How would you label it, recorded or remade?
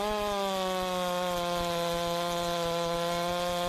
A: recorded